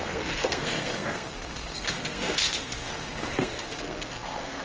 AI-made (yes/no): yes